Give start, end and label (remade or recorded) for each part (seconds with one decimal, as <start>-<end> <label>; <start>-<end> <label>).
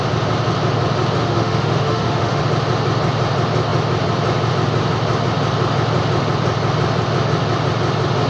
0.0-1.2 recorded; 1.2-2.4 remade; 2.4-8.3 recorded